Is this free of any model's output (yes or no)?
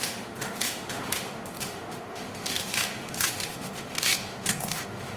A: no